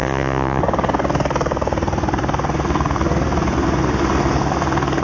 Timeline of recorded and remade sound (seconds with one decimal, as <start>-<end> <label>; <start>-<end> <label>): 0.0-0.6 remade; 0.6-5.0 recorded